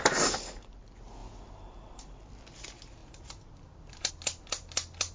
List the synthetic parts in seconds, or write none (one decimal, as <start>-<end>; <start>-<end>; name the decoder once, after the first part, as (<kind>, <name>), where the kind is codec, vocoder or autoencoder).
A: 3.0-4.1 (vocoder, BigVGAN v2)